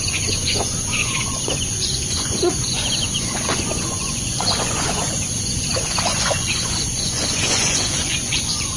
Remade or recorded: remade